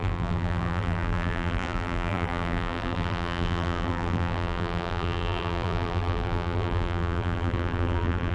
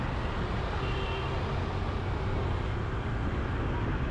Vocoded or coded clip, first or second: first